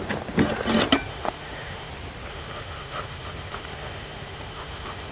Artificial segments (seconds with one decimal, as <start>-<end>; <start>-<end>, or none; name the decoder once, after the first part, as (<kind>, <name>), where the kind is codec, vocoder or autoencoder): 1.1-1.9 (autoencoder, DAC-VAE); 2.3-5.1